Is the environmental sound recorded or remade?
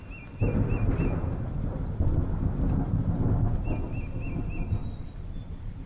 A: recorded